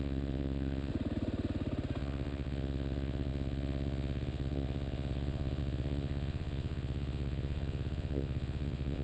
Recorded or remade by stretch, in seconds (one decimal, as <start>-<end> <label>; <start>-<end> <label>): 0.0-0.9 remade; 0.9-2.0 recorded; 2.0-9.0 remade

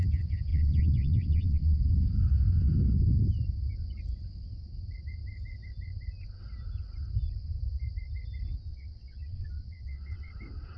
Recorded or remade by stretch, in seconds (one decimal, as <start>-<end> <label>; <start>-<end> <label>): 0.0-0.5 recorded; 0.5-1.8 remade; 1.8-8.7 recorded; 8.7-10.3 remade; 10.3-10.8 recorded

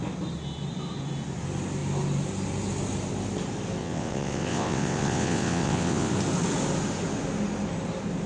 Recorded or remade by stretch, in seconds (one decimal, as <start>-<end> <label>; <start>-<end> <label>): 0.0-3.8 recorded; 3.8-6.1 remade; 6.1-8.3 recorded